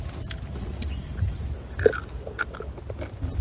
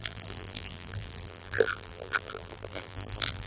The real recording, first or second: first